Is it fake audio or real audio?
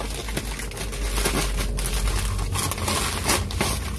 real